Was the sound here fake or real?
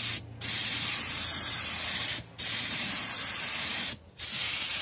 real